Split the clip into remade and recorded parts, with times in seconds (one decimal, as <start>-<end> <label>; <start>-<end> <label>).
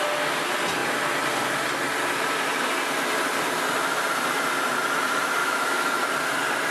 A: 0.0-5.4 recorded; 5.4-6.0 remade; 6.0-6.7 recorded